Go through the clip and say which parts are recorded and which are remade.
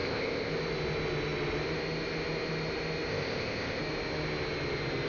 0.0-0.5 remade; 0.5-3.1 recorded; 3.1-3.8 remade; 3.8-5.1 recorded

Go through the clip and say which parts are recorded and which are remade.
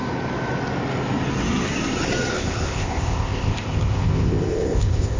0.0-2.3 recorded; 2.3-5.2 remade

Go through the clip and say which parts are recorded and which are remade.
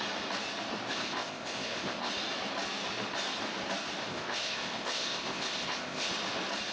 0.0-0.9 recorded; 0.9-2.1 remade; 2.1-4.1 recorded; 4.1-6.1 remade; 6.1-6.7 recorded